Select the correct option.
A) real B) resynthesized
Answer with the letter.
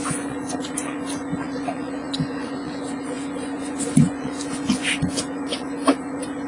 B